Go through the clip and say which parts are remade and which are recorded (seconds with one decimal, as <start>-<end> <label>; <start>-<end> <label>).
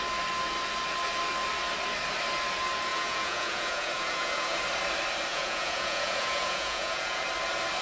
0.0-2.9 recorded; 2.9-4.6 remade; 4.6-5.3 recorded; 5.3-7.2 remade; 7.2-7.8 recorded